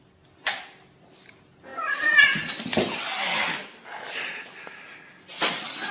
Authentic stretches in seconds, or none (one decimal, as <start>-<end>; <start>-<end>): 0.0-5.9